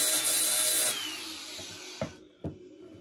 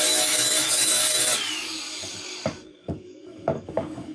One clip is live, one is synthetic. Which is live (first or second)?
first